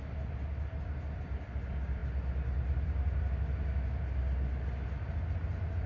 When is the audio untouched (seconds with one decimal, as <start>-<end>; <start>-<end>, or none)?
0.0-5.9

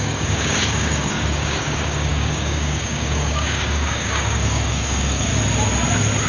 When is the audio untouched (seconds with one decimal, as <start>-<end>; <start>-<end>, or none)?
5.3-6.3

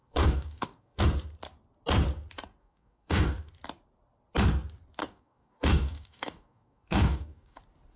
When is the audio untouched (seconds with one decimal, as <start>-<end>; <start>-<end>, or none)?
1.0-2.6; 3.5-5.0; 7.6-8.0